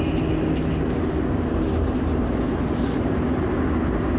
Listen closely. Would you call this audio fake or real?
real